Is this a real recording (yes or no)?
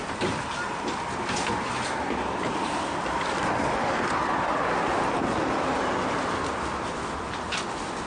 yes